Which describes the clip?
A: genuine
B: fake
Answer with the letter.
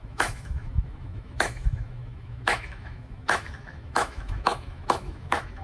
B